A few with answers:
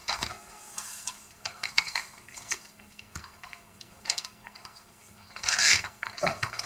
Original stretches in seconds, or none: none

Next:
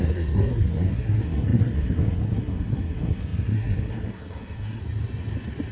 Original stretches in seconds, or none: 4.8-5.7

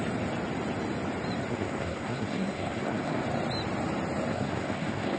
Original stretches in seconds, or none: 0.0-1.5; 3.2-4.3

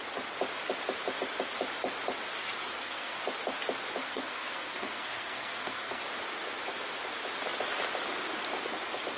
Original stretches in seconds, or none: 0.0-2.4; 3.2-4.0; 6.0-9.2

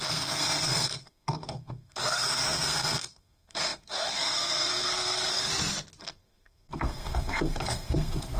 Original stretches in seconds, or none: 5.5-6.0